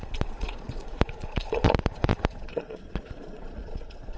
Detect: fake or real fake